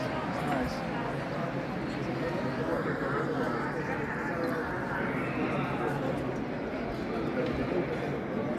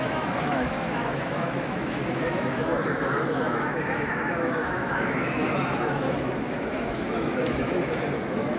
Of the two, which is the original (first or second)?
first